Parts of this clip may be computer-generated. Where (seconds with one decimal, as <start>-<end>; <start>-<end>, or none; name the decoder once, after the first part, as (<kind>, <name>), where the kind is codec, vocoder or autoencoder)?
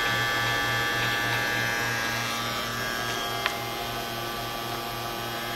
none